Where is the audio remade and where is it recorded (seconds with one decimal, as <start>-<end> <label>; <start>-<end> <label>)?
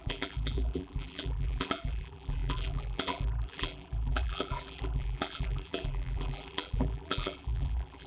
0.0-8.1 remade